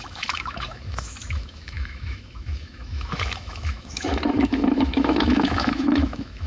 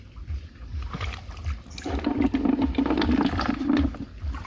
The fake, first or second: first